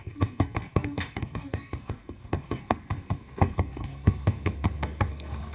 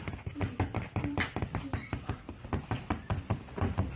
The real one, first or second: second